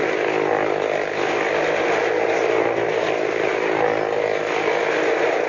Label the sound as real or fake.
real